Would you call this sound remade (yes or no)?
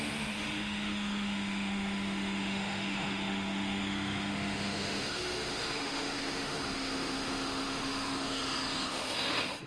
yes